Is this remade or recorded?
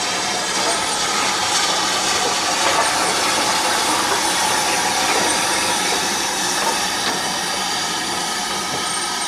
remade